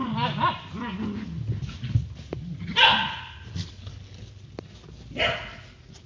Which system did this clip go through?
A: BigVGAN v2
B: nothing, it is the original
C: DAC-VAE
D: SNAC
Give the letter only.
B